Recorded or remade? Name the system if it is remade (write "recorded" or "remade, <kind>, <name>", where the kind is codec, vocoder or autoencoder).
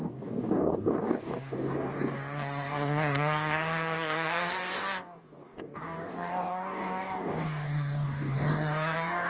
remade, codec, DAC